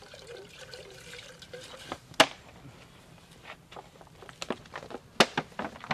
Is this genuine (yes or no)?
yes